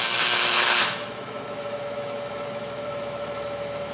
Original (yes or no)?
no